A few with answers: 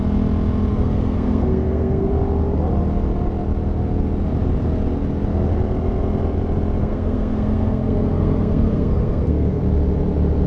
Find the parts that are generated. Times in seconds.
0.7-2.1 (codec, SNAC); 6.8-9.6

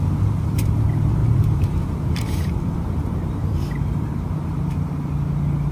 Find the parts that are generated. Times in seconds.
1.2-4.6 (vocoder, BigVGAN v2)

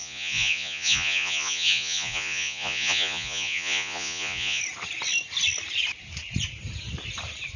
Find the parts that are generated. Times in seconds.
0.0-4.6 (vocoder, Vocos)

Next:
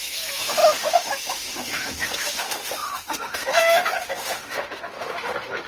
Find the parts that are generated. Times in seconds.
0.0-5.7 (autoencoder, DAC-VAE)

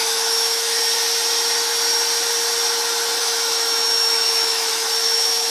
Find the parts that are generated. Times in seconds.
0.0-0.8 (autoencoder, DAC-VAE); 3.2-5.5

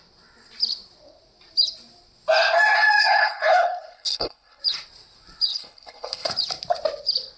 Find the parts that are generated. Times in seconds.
3.0-4.6 (codec, HILCodec); 5.5-6.3

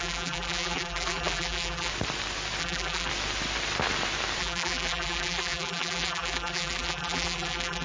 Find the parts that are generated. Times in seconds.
0.0-1.9 (vocoder, BigVGAN v2); 2.6-3.1; 4.4-7.8

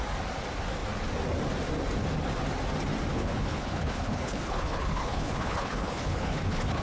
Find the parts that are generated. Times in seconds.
3.1-6.8 (codec, HILCodec)